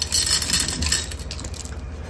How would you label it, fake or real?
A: real